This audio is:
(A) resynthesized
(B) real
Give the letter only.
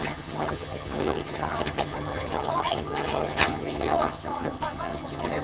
A